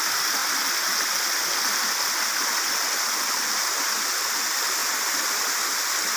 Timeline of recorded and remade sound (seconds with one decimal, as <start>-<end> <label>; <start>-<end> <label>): 0.0-6.2 recorded